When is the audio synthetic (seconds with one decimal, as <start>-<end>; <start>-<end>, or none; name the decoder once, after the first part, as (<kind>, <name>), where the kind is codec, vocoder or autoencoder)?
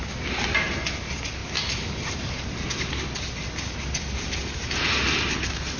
none